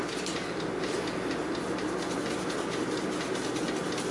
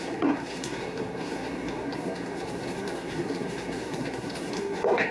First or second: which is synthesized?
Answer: second